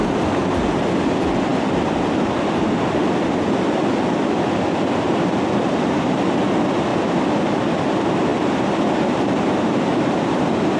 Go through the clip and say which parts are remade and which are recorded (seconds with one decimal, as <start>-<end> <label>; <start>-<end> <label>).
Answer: 0.0-10.8 recorded